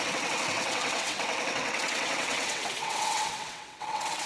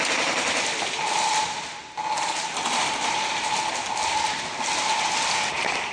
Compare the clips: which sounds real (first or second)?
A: second